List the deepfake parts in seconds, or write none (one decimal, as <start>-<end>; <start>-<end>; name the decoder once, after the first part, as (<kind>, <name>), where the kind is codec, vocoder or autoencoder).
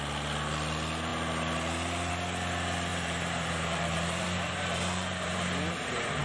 2.9-6.2 (vocoder, BigVGAN v2)